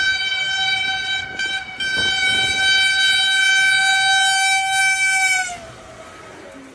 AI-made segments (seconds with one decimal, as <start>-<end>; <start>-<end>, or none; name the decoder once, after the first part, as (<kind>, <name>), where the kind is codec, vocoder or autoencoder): none